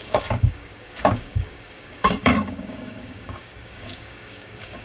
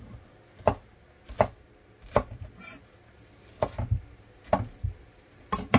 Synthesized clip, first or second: first